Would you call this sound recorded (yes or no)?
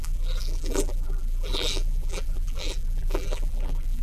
no